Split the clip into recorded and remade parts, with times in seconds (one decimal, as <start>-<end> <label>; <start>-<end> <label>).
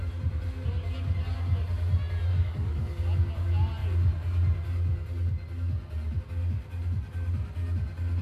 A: 0.0-2.3 recorded; 2.3-3.0 remade; 3.0-8.2 recorded